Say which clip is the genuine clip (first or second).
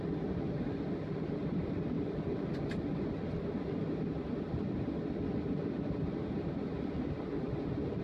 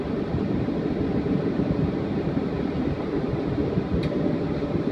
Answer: first